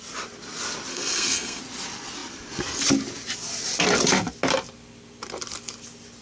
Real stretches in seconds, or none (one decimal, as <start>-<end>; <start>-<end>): 0.0-0.9; 1.6-6.2